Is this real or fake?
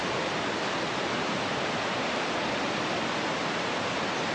real